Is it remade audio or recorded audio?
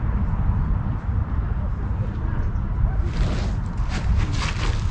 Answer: recorded